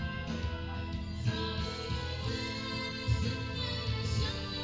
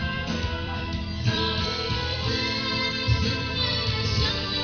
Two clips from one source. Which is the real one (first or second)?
first